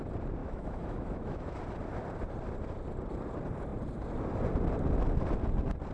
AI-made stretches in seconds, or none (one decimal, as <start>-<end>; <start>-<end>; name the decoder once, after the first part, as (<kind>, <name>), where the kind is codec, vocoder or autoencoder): 0.4-1.6 (autoencoder, DAC-VAE)